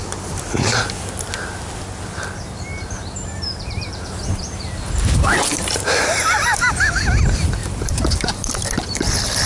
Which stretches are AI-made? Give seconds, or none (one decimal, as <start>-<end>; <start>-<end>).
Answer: 2.7-6.9; 7.6-8.7